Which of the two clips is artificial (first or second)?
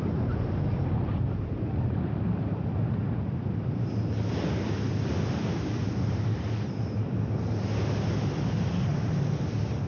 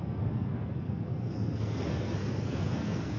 second